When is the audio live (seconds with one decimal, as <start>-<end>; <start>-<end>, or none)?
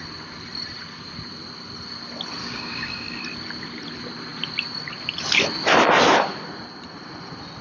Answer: 0.0-2.4; 3.2-7.6